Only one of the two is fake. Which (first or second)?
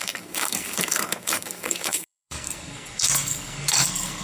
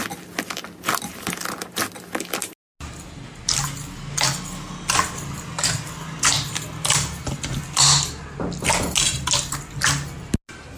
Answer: first